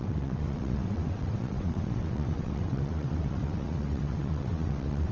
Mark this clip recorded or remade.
remade